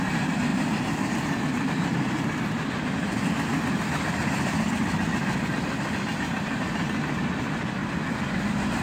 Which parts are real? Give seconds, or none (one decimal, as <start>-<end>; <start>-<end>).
0.0-8.8